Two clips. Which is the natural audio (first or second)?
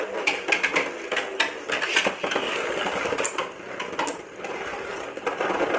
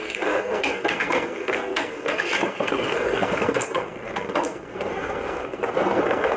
first